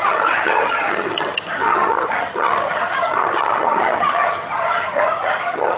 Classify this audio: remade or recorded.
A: remade